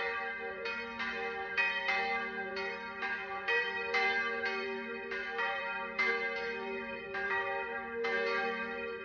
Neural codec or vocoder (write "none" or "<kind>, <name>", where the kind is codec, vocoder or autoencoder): vocoder, BigVGAN v2